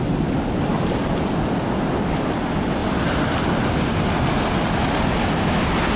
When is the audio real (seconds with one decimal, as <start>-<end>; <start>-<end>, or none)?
0.0-0.7; 1.3-6.0